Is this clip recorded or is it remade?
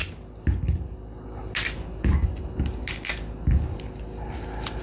recorded